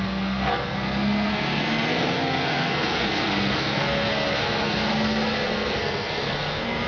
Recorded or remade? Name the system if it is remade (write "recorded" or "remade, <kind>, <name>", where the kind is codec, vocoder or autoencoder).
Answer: remade, codec, SNAC